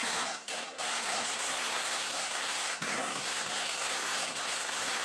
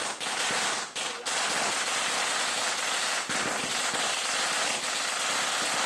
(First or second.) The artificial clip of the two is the first